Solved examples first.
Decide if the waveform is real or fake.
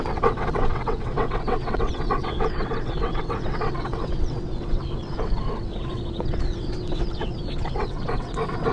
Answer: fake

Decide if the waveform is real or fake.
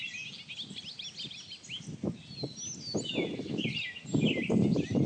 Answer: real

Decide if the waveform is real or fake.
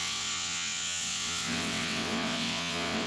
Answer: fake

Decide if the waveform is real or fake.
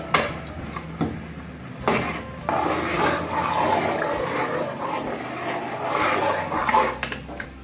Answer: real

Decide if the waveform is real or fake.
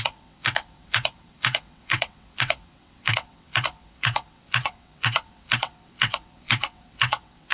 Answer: fake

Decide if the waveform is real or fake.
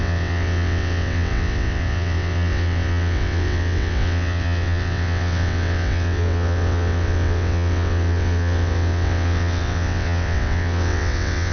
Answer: fake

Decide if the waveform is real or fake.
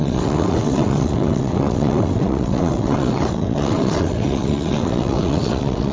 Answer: fake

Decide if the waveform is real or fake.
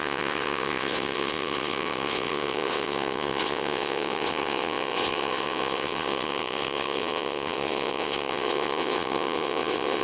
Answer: fake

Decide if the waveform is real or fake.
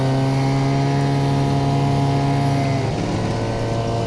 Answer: real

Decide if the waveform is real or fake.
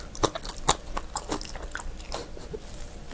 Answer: real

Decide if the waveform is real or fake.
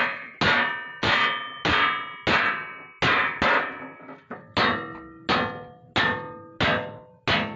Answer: real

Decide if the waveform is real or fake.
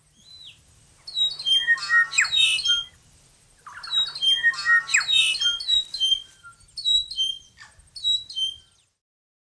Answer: real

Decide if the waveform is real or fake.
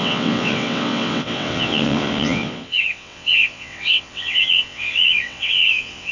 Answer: fake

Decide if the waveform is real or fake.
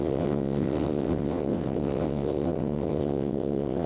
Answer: fake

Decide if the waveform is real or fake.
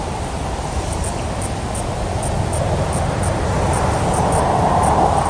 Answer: real